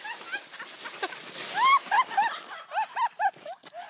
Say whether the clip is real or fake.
real